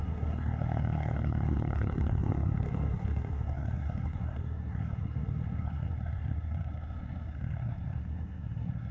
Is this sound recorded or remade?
remade